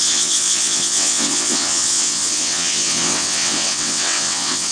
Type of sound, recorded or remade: remade